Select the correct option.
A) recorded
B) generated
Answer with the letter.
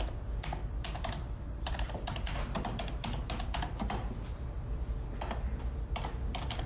A